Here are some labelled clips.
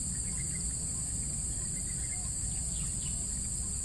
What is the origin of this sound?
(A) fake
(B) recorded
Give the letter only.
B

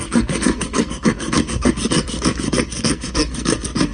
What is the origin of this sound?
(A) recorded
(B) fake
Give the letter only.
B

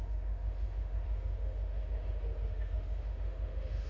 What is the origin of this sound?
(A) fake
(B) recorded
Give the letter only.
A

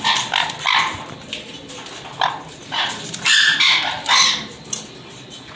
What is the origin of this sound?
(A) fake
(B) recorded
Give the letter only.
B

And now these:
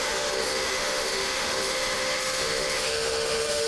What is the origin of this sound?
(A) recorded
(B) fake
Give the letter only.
B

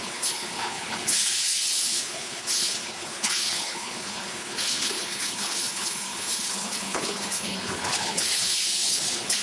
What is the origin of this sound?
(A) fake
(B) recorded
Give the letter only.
A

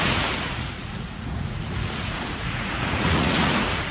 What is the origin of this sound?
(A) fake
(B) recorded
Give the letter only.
A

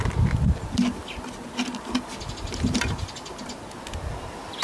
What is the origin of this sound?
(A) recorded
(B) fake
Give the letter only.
A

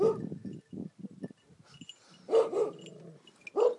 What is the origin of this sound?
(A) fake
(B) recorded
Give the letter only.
B